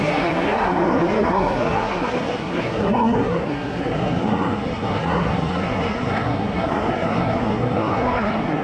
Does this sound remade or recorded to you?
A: remade